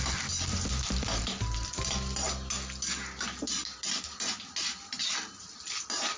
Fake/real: real